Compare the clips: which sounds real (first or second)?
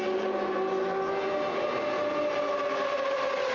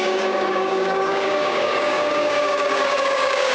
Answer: first